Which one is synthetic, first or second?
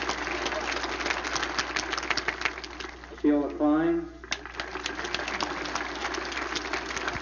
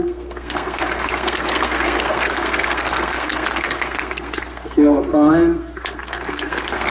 second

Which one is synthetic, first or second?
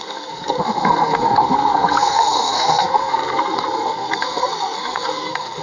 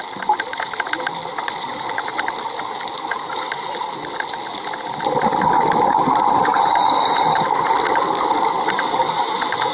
first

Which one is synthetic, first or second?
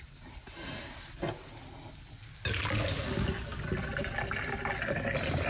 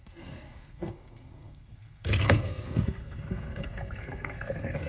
second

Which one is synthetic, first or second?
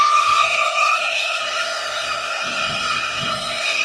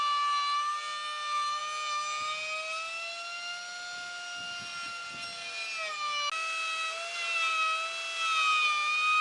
first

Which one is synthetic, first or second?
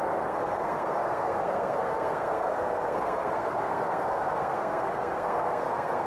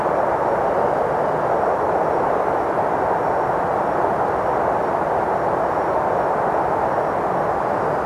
first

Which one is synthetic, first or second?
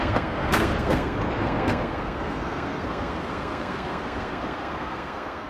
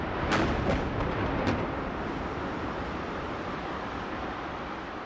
first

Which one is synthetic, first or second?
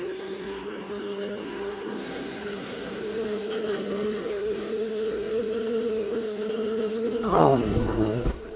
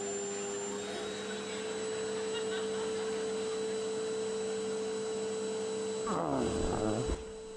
first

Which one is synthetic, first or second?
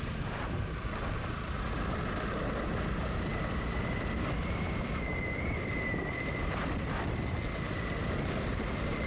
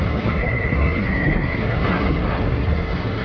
second